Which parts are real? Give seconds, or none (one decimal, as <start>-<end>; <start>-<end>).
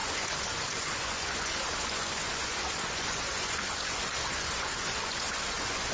none